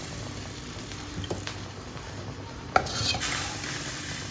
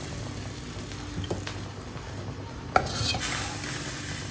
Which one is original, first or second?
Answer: second